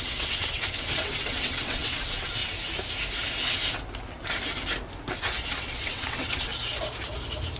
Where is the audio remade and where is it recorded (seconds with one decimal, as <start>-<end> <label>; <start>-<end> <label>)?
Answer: 0.0-2.4 remade; 2.4-5.7 recorded; 5.7-6.5 remade; 6.5-7.6 recorded